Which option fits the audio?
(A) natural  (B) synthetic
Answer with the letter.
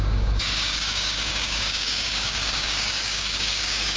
B